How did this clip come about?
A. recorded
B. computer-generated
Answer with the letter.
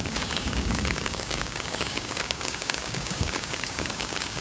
B